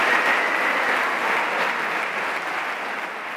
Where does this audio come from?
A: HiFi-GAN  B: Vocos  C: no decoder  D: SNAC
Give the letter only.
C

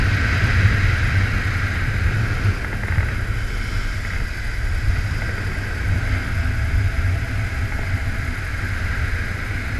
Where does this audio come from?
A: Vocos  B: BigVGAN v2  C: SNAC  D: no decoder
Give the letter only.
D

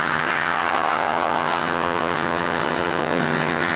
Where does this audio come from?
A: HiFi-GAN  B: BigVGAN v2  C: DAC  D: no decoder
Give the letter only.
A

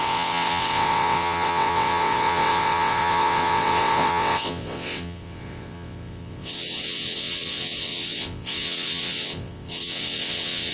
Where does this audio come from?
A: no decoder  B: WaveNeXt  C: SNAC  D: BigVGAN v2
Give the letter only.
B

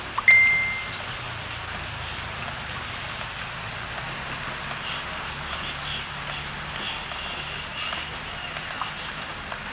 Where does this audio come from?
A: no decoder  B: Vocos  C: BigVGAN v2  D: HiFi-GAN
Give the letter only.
A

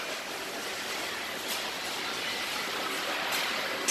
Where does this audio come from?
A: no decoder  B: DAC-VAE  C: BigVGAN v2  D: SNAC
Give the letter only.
A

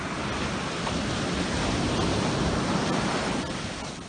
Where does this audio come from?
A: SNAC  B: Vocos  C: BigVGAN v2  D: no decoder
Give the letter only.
D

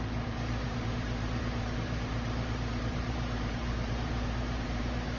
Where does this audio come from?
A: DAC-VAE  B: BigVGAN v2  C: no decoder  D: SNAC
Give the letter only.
B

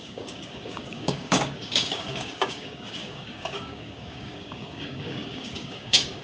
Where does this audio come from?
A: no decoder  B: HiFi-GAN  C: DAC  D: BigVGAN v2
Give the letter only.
C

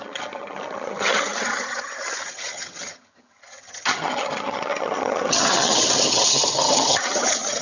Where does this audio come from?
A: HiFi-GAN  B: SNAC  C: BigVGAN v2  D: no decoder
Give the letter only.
A